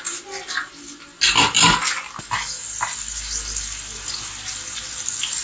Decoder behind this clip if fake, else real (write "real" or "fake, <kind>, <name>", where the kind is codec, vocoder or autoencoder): real